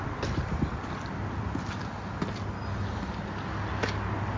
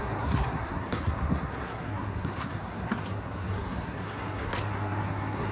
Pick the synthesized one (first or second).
second